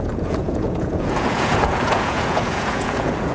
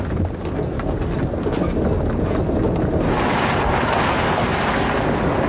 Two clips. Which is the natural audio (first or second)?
second